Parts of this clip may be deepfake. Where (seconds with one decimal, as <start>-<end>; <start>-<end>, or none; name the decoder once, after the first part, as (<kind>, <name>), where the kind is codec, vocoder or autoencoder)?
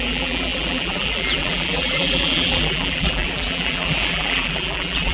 0.0-5.1 (vocoder, BigVGAN v2)